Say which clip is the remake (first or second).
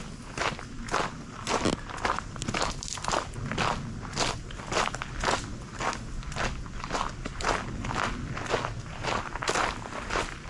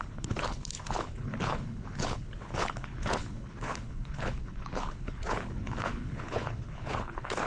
second